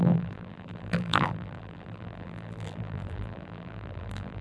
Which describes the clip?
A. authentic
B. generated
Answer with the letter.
B